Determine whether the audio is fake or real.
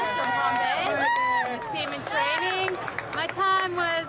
real